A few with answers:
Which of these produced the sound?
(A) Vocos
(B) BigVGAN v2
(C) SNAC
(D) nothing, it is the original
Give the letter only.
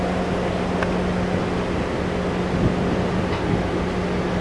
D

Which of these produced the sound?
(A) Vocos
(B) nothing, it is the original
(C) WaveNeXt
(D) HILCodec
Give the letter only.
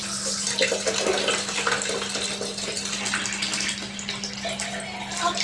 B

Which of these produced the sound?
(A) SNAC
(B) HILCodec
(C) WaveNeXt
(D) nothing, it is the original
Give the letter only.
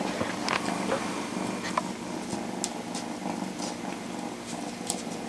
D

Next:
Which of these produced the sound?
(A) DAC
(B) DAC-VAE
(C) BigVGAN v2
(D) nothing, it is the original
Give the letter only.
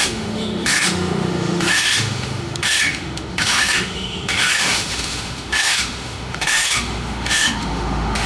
B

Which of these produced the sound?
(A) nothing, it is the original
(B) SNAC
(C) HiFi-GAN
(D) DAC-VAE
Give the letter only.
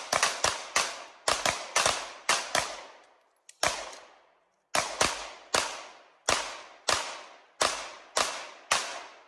A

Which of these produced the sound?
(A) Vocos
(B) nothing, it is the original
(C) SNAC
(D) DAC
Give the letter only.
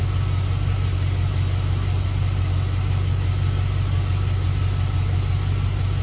B